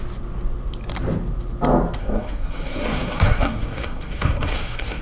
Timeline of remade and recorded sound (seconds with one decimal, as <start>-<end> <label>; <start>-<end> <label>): 0.0-2.0 recorded; 2.0-5.0 remade